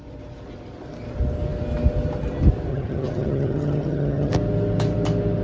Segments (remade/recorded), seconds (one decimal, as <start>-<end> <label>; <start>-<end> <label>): 0.0-2.7 recorded; 2.7-4.3 remade; 4.3-5.4 recorded